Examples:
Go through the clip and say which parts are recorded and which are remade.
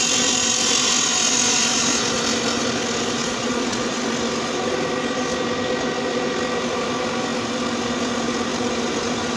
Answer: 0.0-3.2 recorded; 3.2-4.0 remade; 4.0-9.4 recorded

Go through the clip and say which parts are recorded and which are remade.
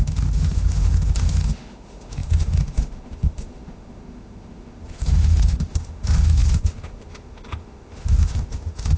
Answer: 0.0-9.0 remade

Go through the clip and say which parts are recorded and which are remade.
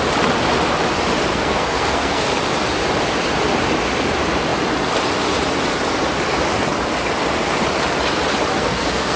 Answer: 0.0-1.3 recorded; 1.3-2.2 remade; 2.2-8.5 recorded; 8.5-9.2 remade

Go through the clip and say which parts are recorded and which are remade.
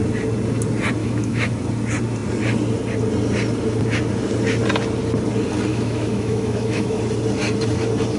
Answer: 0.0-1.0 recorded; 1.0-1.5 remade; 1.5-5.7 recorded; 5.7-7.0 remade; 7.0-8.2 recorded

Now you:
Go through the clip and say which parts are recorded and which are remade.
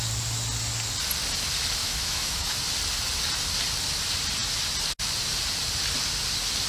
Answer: 0.0-1.8 recorded; 1.8-2.6 remade; 2.6-6.7 recorded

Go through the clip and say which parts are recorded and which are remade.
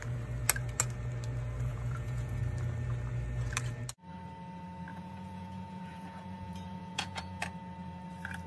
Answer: 0.0-1.7 recorded; 1.7-2.4 remade; 2.4-4.9 recorded; 4.9-7.4 remade; 7.4-8.5 recorded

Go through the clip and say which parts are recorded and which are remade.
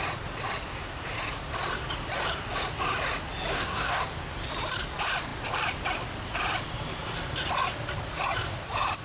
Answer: 0.0-3.5 recorded; 3.5-4.0 remade; 4.0-9.0 recorded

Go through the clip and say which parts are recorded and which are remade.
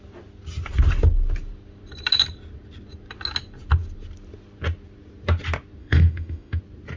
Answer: 0.0-5.8 recorded; 5.8-6.6 remade; 6.6-7.0 recorded